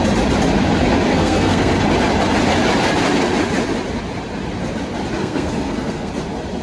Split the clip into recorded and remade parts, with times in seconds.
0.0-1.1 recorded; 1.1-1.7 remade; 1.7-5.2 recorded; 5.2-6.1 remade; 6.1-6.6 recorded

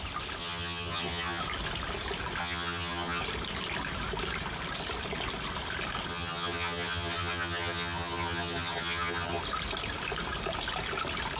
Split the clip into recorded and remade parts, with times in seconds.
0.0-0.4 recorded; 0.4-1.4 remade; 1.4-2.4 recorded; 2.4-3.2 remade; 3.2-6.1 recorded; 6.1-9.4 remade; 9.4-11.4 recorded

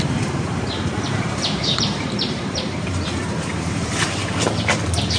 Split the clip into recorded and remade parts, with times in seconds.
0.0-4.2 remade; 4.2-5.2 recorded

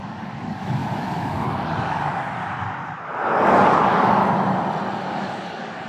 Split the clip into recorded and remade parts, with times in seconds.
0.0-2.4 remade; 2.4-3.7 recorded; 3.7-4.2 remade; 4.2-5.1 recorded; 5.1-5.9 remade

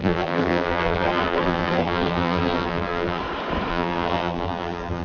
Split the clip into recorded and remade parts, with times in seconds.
0.0-3.2 remade; 3.2-3.7 recorded; 3.7-5.0 remade

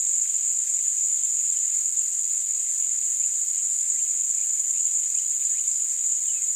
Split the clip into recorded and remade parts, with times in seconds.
0.0-6.6 recorded